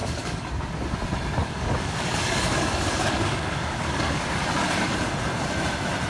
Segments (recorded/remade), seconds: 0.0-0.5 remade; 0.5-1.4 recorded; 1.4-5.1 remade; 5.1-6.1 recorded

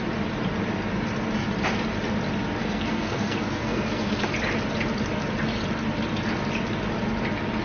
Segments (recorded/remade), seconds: 0.0-2.6 recorded; 2.6-4.2 remade; 4.2-7.6 recorded

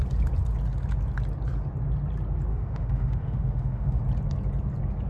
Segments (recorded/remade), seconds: 0.0-2.5 recorded; 2.5-4.0 remade; 4.0-5.1 recorded